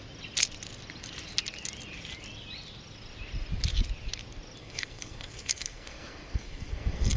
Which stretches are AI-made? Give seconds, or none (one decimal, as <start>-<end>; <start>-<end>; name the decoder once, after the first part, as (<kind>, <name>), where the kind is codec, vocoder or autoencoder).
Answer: 4.6-7.2 (codec, SNAC)

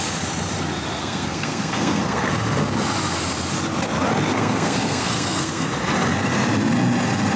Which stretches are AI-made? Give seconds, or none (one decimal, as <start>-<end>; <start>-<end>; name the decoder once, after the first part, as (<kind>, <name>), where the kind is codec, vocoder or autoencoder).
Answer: 1.0-2.3 (codec, SNAC); 4.3-5.7

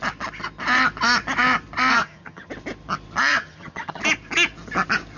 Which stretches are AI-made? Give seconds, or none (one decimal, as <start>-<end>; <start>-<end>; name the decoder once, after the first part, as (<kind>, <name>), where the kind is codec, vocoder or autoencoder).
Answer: 2.0-2.5 (vocoder, HiFi-GAN); 3.3-4.0

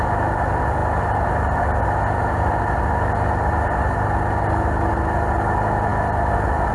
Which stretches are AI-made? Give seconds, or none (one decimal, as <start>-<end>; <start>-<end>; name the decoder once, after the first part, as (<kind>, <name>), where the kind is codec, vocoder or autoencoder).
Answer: none

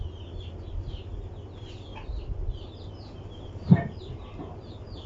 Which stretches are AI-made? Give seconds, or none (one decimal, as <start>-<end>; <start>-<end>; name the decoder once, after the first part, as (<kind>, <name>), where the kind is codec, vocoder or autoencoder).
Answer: none

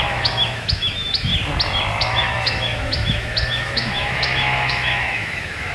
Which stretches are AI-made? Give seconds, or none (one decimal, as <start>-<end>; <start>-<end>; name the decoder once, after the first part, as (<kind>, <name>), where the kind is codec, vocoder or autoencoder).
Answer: 0.0-1.3 (autoencoder, DAC-VAE); 2.0-5.7

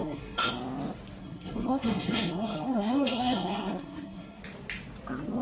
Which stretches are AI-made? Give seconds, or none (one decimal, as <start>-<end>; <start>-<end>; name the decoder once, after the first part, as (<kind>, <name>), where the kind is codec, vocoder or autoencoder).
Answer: 0.0-0.5 (codec, SNAC); 1.2-4.4